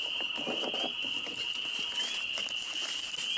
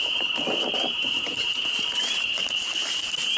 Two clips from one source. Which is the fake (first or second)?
second